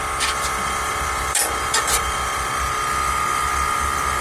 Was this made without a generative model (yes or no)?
yes